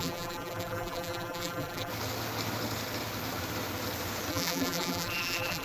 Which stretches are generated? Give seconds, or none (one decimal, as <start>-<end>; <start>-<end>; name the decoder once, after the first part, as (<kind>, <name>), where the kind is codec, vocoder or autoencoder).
0.0-1.9 (vocoder, BigVGAN v2); 4.3-5.6